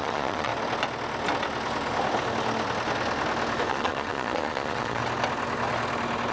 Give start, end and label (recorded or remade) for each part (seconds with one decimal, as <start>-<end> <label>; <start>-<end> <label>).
0.0-0.5 remade; 0.5-3.7 recorded; 3.7-5.0 remade; 5.0-6.3 recorded